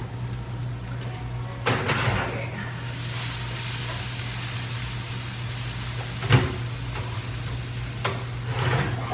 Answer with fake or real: real